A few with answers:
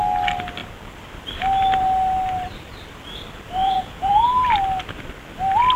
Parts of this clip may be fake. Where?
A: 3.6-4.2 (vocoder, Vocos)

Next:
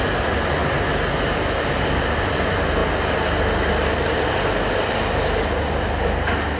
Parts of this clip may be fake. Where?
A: none

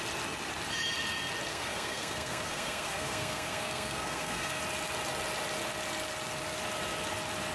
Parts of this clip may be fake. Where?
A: 1.5-4.6 (codec, SNAC)

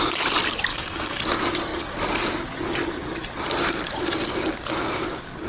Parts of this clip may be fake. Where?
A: 0.7-1.2 (autoencoder, DAC-VAE)